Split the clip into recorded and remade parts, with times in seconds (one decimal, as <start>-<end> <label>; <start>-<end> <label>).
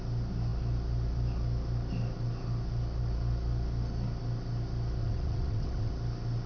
0.0-5.0 recorded; 5.0-5.9 remade; 5.9-6.5 recorded